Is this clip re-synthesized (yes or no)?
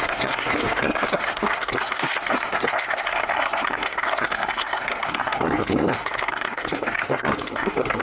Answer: yes